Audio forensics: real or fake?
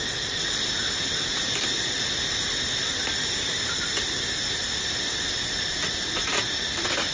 real